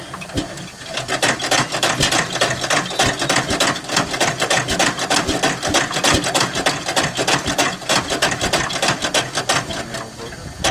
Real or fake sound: real